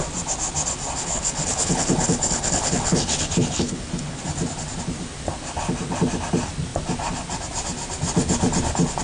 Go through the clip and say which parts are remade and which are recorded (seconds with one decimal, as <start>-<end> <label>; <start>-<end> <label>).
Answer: 0.0-1.0 recorded; 1.0-4.2 remade; 4.2-9.0 recorded